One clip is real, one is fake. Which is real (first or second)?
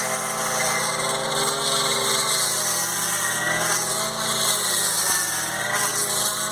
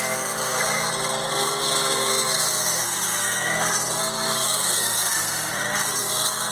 first